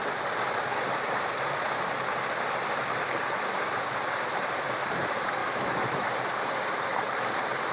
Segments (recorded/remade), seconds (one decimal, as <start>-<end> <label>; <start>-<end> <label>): 0.0-5.4 recorded; 5.4-6.1 remade; 6.1-7.7 recorded